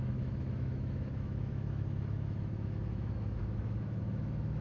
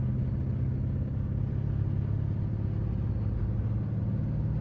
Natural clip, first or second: second